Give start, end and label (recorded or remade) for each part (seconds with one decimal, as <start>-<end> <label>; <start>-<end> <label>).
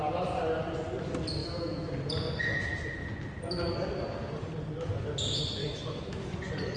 0.0-1.4 recorded; 1.4-1.9 remade; 1.9-5.6 recorded; 5.6-6.2 remade; 6.2-6.8 recorded